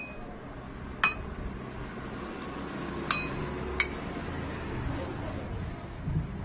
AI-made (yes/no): no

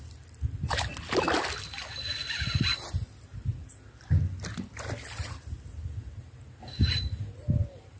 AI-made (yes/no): no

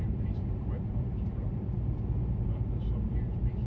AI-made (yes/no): yes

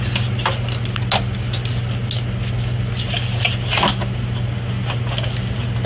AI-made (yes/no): no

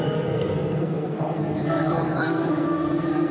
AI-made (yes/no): yes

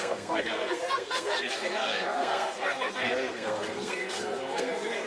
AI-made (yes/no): yes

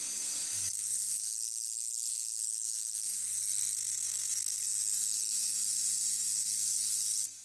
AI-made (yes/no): yes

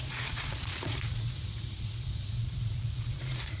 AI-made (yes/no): yes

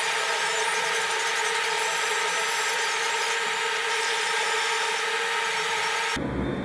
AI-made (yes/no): no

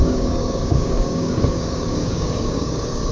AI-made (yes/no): yes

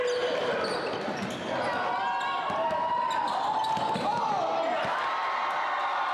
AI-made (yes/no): no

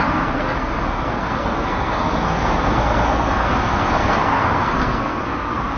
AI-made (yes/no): yes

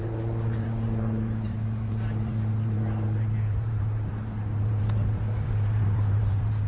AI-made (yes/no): yes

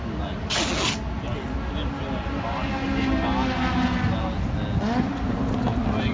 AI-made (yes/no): no